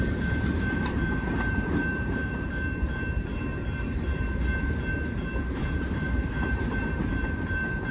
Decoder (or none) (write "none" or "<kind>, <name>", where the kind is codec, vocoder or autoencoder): vocoder, BigVGAN v2